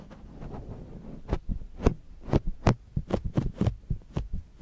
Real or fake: real